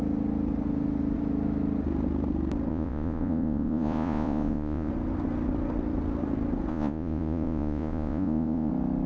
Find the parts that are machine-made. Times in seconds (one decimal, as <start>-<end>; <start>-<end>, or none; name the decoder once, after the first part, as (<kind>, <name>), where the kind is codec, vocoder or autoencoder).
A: 2.7-4.9 (vocoder, Vocos); 6.7-8.7